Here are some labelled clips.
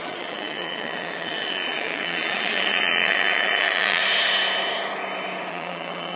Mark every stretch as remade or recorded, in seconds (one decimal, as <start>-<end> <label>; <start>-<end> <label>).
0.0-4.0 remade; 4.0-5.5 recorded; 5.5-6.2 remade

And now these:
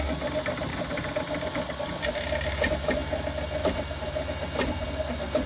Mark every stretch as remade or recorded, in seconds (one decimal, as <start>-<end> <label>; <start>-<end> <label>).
0.0-5.5 recorded

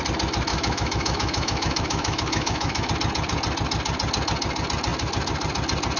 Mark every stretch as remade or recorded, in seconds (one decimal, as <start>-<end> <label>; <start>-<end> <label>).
0.0-0.5 recorded; 0.5-2.9 remade; 2.9-6.0 recorded

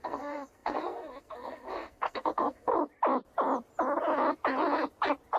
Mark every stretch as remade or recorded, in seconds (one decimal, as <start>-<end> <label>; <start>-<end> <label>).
0.0-2.7 remade; 2.7-5.4 recorded

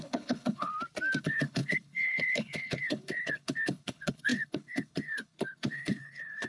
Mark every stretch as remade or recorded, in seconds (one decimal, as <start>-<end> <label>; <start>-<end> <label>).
0.0-0.7 remade; 0.7-1.2 recorded; 1.2-6.5 remade

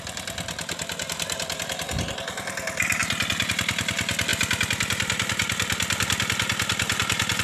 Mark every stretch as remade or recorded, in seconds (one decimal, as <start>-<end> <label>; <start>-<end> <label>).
0.0-7.4 recorded